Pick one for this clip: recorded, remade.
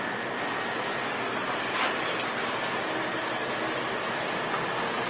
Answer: recorded